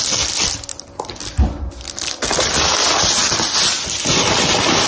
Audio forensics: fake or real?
real